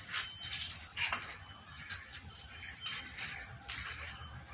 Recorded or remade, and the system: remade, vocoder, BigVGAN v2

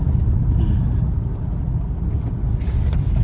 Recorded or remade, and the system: recorded